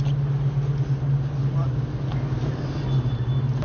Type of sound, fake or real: real